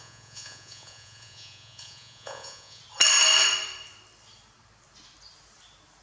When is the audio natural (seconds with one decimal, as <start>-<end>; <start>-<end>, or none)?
2.8-6.0